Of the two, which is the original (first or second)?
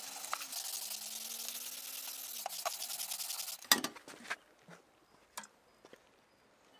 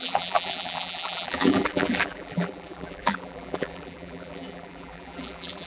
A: first